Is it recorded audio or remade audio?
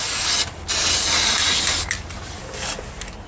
recorded